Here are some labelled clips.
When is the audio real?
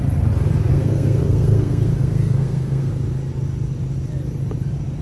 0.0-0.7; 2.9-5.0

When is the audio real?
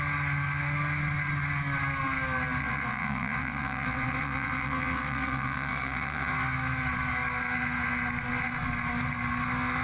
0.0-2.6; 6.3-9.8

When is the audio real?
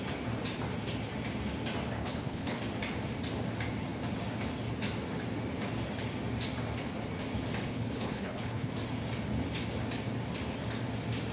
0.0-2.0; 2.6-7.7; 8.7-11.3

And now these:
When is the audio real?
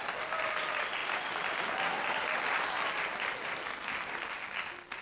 0.0-5.0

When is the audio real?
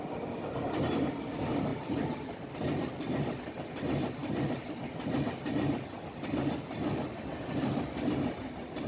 0.0-1.7; 2.5-8.9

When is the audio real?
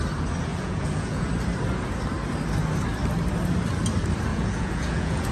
0.0-0.5; 1.3-4.3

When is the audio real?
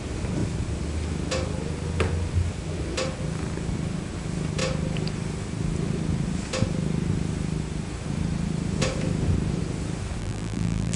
0.0-10.2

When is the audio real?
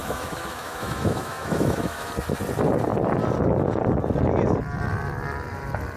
2.1-6.0